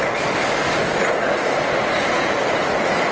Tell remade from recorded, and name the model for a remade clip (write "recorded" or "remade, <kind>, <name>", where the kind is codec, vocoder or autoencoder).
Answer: remade, vocoder, BigVGAN v2